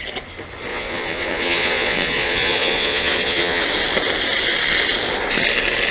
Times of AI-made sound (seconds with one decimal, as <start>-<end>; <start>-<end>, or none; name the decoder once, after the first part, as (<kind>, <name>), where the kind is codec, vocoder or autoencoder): 0.7-3.6 (vocoder, Vocos)